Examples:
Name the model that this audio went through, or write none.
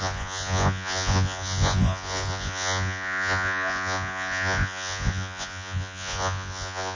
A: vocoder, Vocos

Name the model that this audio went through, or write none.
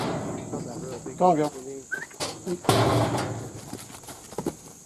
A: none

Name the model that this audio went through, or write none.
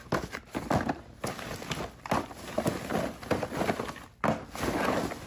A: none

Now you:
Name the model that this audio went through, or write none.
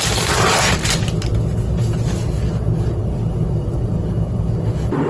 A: none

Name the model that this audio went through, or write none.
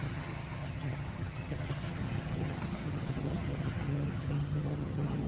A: vocoder, HiFi-GAN